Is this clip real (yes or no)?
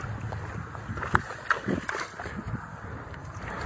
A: yes